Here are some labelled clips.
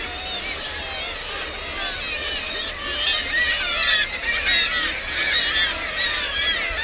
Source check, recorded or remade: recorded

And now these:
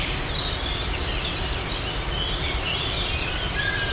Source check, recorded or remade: recorded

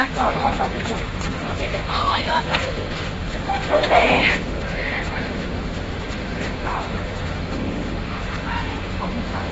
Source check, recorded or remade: remade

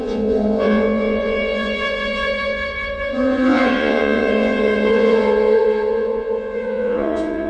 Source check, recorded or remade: remade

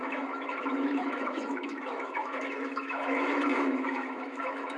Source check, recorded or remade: remade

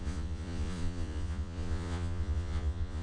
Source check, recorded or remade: remade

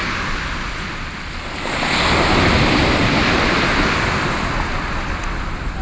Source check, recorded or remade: recorded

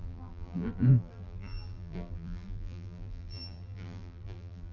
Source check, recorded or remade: remade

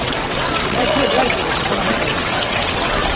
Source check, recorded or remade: remade